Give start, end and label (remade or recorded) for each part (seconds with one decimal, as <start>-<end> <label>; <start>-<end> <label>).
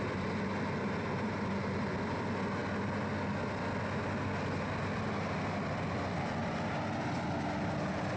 0.0-8.2 recorded